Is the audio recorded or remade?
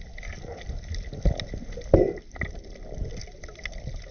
recorded